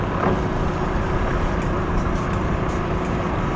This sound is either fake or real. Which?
fake